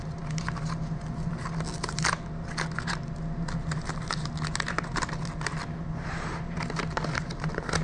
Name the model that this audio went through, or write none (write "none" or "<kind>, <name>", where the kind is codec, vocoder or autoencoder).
none